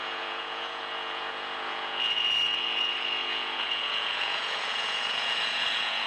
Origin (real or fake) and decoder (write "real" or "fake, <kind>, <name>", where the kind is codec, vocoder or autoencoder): fake, vocoder, Vocos